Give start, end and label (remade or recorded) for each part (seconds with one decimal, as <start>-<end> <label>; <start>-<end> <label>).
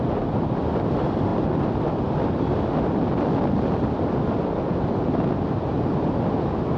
0.0-6.8 recorded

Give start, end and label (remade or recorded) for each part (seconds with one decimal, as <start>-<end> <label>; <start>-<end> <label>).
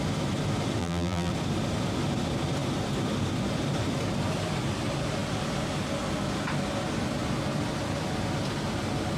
0.0-0.8 recorded; 0.8-1.3 remade; 1.3-9.2 recorded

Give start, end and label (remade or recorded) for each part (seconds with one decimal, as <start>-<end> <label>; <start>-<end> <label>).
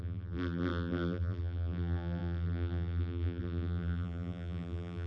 0.0-5.1 remade